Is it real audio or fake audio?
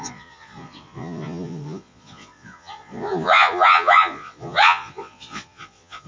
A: fake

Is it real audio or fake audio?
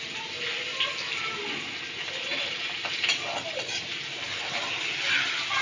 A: real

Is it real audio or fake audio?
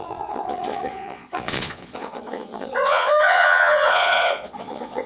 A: fake